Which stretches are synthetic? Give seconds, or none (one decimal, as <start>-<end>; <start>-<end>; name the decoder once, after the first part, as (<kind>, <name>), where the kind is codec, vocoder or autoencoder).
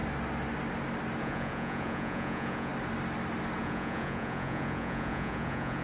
1.2-2.7 (vocoder, Vocos); 3.6-5.8